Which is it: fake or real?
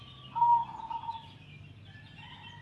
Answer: real